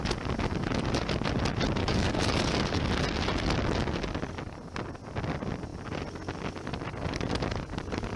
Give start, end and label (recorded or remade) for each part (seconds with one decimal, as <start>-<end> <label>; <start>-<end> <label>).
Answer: 0.0-1.8 recorded; 1.8-2.9 remade; 2.9-8.2 recorded